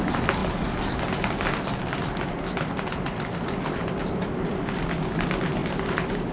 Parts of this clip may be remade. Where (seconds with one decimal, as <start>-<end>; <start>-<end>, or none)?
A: 5.6-6.3